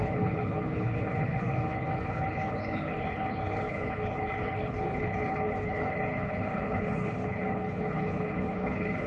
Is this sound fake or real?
fake